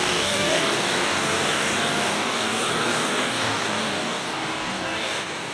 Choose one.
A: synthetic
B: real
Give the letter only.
A